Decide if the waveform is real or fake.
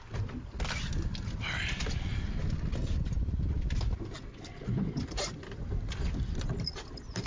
real